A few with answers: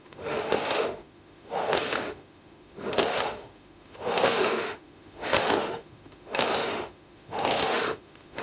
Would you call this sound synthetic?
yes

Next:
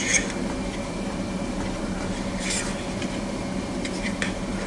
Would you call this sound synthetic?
no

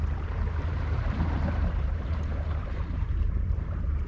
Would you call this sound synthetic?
yes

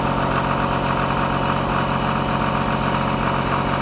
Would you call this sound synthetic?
no